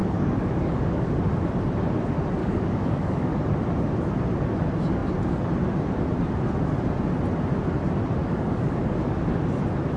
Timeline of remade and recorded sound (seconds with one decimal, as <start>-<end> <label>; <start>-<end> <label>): 0.0-1.2 remade; 1.2-2.4 recorded; 2.4-3.4 remade; 3.4-8.2 recorded; 8.2-9.3 remade; 9.3-10.0 recorded